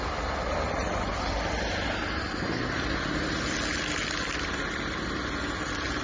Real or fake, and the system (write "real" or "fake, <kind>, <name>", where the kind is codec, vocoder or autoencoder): real